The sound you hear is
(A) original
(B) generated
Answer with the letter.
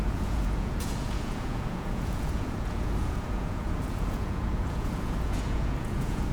B